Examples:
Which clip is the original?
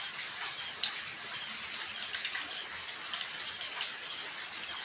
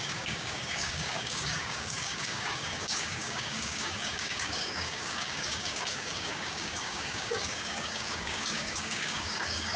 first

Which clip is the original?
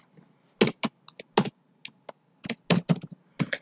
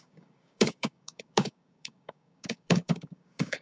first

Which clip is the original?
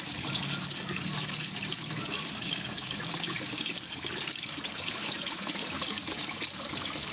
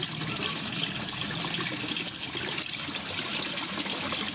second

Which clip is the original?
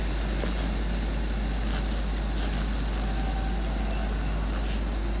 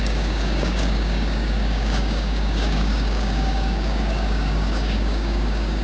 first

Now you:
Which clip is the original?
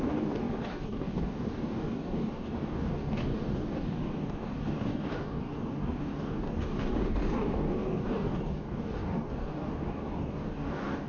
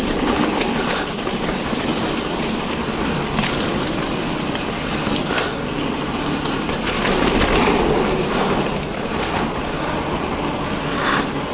second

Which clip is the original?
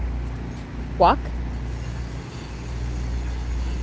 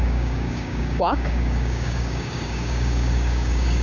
first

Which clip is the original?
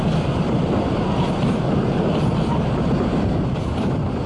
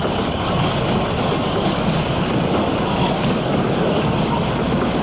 first